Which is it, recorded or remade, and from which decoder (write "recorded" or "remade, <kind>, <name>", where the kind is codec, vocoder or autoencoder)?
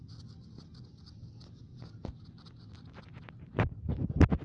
recorded